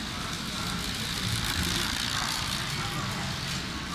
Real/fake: real